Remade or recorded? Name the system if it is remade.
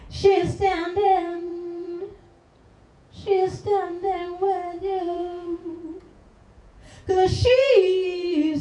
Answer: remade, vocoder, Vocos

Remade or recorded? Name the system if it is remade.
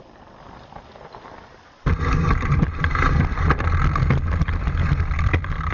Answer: recorded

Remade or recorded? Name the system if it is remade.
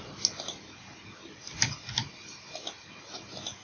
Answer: recorded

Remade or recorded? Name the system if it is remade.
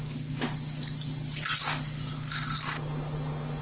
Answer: recorded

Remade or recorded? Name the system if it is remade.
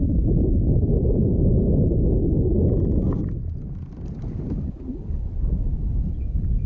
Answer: recorded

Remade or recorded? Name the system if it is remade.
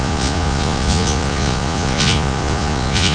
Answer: remade, vocoder, Vocos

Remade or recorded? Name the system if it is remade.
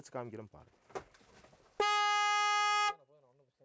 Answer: recorded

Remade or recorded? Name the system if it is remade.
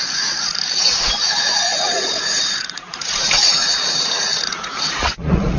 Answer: remade, vocoder, Vocos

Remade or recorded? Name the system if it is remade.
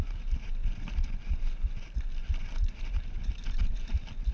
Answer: recorded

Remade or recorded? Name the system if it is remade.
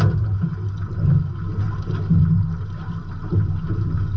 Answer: recorded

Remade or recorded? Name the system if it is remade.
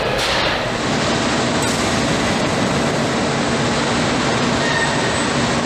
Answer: recorded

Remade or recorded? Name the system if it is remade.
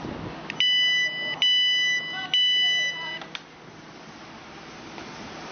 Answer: recorded